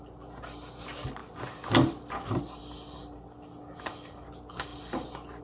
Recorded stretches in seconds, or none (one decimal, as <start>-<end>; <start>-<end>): 0.0-5.4